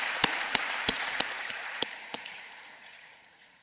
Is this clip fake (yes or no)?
yes